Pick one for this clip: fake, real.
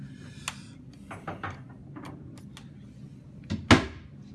real